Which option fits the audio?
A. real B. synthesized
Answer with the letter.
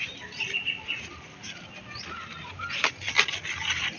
A